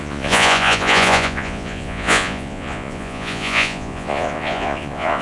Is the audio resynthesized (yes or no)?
yes